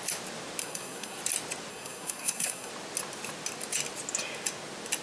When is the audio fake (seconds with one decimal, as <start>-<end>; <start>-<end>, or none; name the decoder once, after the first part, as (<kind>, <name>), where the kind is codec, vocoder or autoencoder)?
0.6-1.2 (codec, SNAC); 1.7-2.7